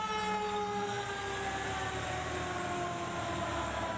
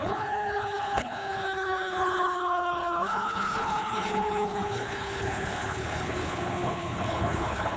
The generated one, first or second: second